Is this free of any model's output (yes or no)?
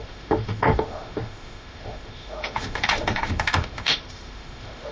no